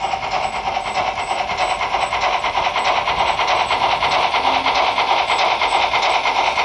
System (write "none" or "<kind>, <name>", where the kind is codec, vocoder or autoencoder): none